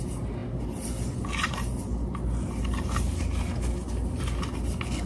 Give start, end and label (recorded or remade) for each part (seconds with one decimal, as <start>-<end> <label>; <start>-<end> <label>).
0.0-5.1 recorded